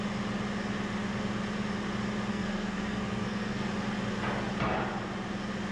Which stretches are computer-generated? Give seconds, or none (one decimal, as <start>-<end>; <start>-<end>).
2.3-3.7